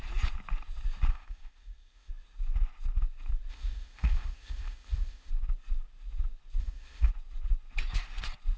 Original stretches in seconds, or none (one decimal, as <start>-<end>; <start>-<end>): 0.0-1.1; 2.1-3.5; 5.3-6.6; 7.1-8.6